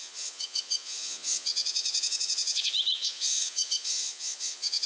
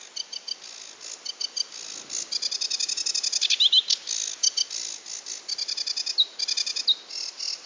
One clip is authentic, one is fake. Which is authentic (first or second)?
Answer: second